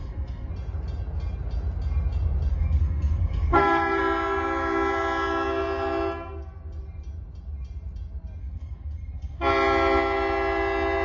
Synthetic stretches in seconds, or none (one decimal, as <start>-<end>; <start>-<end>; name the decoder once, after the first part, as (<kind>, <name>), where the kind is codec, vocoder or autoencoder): 0.0-0.5 (codec, SNAC); 2.5-4.0; 8.4-9.4